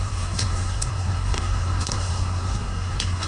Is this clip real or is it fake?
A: fake